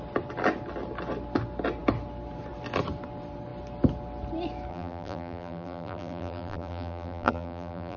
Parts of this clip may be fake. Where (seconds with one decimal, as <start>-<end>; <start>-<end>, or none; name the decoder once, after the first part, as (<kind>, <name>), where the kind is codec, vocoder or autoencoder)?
4.7-8.0 (vocoder, BigVGAN v2)